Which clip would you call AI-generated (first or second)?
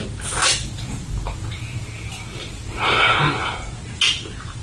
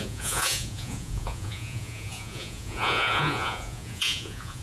second